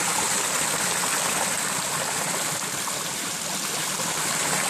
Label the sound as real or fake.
real